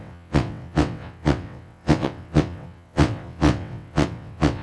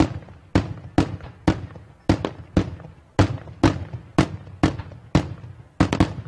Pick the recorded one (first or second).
second